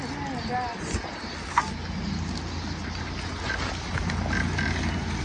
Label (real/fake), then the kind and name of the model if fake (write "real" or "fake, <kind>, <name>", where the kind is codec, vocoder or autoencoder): real